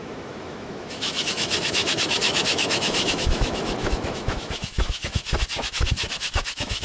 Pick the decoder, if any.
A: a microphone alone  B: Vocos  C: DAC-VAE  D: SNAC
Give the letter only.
C